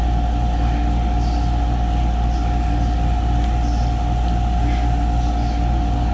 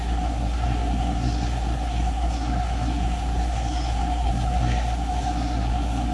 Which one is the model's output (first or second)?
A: second